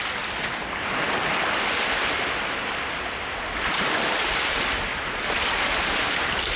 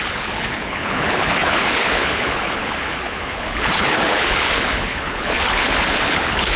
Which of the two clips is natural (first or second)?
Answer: first